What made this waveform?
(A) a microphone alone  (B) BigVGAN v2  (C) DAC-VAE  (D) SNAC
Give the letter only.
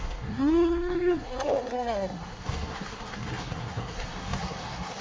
D